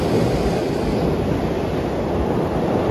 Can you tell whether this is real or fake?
real